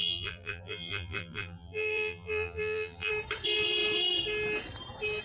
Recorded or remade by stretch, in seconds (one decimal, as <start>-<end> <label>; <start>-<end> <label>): 0.0-3.1 remade; 3.1-5.2 recorded